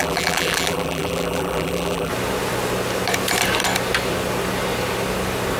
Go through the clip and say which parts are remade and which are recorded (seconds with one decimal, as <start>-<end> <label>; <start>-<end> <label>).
0.0-2.1 remade; 2.1-5.6 recorded